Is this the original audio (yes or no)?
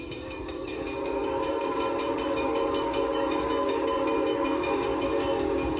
no